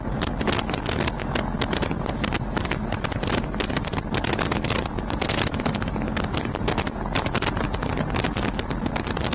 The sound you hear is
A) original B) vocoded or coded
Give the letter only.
A